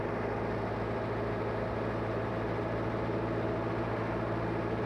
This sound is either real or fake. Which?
real